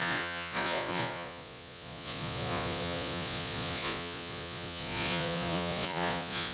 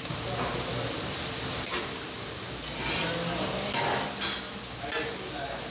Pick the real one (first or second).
second